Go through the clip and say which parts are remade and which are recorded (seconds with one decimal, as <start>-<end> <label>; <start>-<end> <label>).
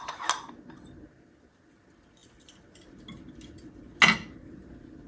0.0-5.1 recorded